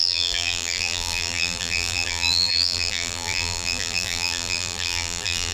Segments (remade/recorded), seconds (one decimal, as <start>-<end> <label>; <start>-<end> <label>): 0.0-5.5 remade